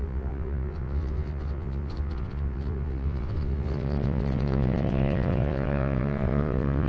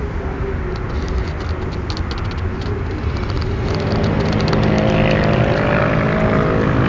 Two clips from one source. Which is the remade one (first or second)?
first